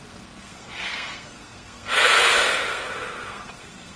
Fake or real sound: fake